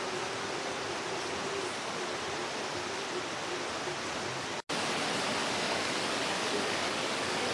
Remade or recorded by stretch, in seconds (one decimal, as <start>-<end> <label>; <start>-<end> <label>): 0.0-5.4 recorded; 5.4-7.5 remade